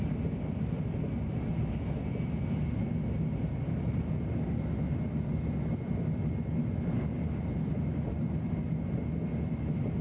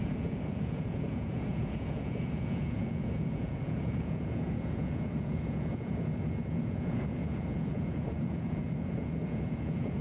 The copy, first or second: second